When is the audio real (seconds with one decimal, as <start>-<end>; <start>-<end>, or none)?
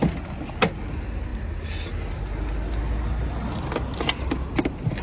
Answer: 0.0-5.0